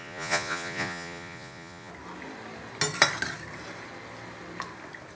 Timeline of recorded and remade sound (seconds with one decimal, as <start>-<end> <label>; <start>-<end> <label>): 0.0-1.9 remade; 1.9-5.2 recorded